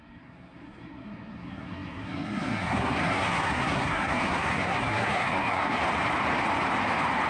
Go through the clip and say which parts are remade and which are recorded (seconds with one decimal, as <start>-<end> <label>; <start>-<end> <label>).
0.0-5.8 remade; 5.8-7.3 recorded